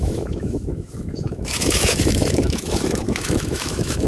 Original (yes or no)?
no